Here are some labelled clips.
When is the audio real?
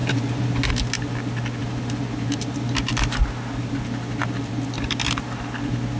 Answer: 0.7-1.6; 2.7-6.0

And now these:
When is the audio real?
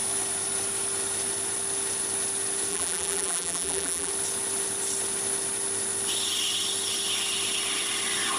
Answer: 0.0-2.7; 4.1-8.4